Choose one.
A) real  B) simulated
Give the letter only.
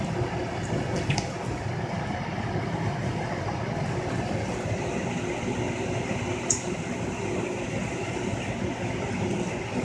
A